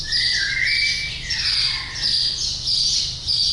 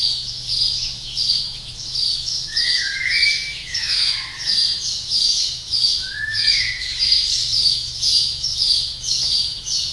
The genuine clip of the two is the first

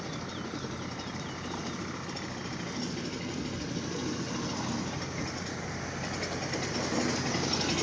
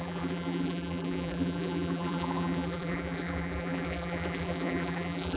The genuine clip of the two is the first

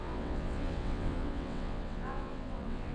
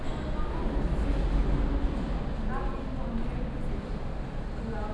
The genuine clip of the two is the second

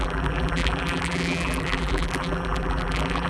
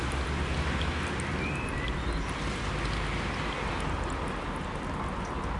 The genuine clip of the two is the second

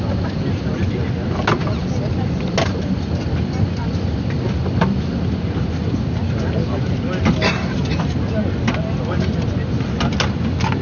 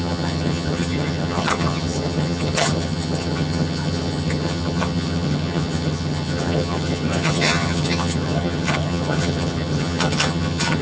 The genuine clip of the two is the first